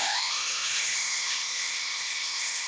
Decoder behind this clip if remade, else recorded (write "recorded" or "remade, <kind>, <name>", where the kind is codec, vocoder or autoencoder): remade, codec, ZipCodec